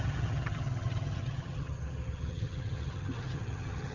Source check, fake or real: fake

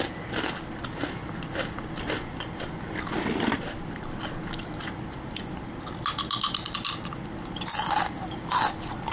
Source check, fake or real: real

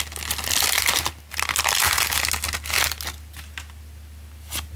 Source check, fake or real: real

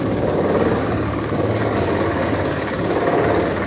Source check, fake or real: fake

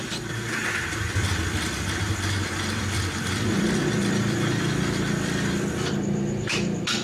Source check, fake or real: fake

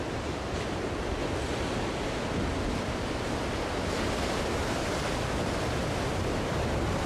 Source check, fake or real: real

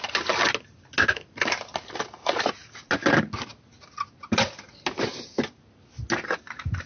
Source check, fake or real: real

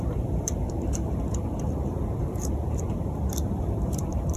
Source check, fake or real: fake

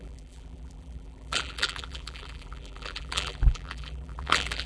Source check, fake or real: fake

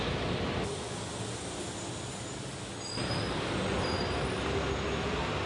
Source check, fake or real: real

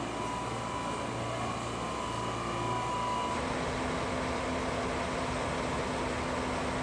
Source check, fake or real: real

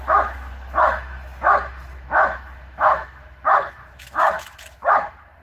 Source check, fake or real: fake